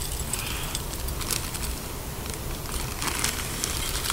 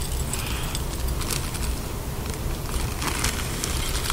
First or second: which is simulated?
first